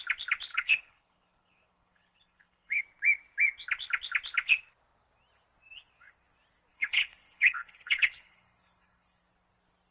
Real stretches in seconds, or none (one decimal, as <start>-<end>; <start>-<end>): 0.0-0.5; 2.8-6.7; 9.2-9.9